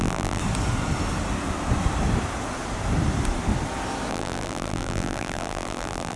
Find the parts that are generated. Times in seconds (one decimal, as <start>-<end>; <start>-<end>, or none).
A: 0.0-0.4; 4.1-6.2